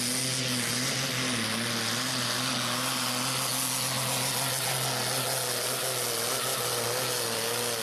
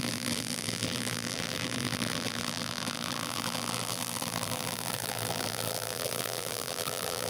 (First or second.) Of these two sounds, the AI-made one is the second